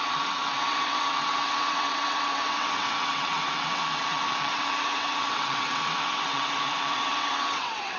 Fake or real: fake